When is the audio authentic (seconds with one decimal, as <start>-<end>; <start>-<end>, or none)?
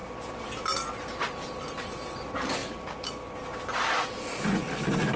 0.0-5.2